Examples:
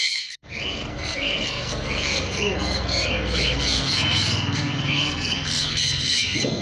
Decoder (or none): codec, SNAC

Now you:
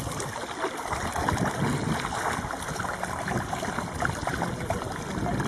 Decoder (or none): none